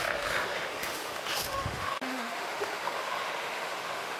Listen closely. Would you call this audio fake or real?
fake